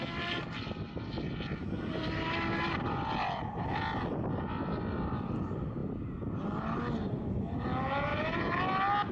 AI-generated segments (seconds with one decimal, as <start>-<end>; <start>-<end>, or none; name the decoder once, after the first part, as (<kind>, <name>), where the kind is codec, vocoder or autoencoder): 1.6-2.2 (vocoder, BigVGAN v2); 8.1-8.6